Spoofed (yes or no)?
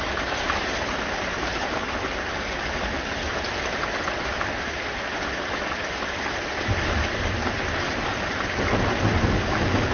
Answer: no